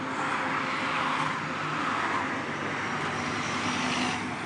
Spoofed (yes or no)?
no